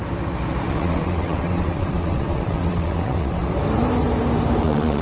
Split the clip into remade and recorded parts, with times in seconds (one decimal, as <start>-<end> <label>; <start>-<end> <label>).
0.0-0.7 recorded; 0.7-3.4 remade; 3.4-4.6 recorded; 4.6-5.0 remade